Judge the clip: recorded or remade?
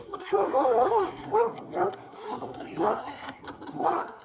remade